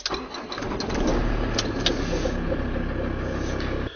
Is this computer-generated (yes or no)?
no